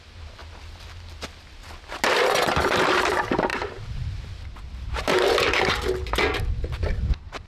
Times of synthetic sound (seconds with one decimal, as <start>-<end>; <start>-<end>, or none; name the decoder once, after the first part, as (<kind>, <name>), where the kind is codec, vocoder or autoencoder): 0.0-0.4 (vocoder, BigVGAN v2); 2.7-5.1; 7.1-7.5